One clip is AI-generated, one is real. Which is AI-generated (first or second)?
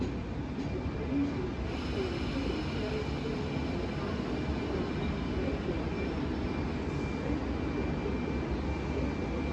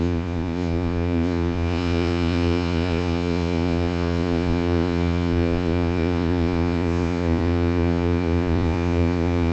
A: second